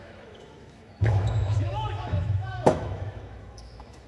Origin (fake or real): fake